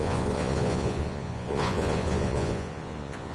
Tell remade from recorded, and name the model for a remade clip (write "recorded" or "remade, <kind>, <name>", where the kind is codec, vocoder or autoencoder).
remade, vocoder, Vocos